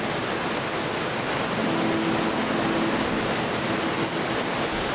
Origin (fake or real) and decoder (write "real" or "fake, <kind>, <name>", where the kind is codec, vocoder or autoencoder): real